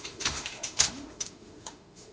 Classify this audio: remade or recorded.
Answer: remade